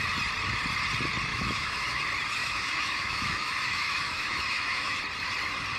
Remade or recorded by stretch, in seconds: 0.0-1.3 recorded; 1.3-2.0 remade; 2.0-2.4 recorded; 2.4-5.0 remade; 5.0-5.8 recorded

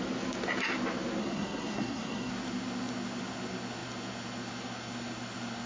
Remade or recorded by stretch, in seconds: 0.0-1.2 recorded; 1.2-2.3 remade; 2.3-5.7 recorded

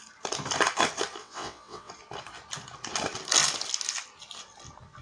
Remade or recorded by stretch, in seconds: 0.0-1.2 recorded; 1.2-1.9 remade; 1.9-5.0 recorded